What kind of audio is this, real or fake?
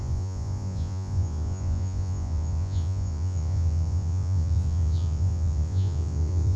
fake